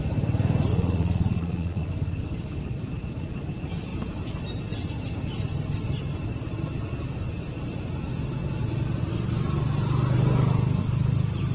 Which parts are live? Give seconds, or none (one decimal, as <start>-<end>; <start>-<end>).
0.0-0.7; 1.9-11.5